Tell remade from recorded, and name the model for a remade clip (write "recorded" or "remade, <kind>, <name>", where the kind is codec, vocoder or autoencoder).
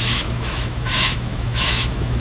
remade, autoencoder, DAC-VAE